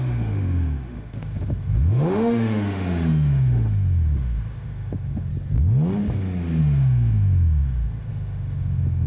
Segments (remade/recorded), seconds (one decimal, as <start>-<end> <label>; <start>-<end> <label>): 0.0-5.3 remade; 5.3-6.6 recorded; 6.6-9.1 remade